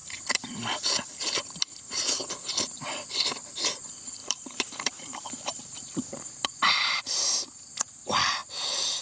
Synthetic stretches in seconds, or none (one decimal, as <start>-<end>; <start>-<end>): 0.0-1.4; 4.2-7.0